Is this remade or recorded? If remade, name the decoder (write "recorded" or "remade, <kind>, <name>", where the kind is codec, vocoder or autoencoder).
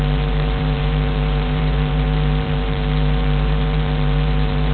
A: remade, vocoder, BigVGAN v2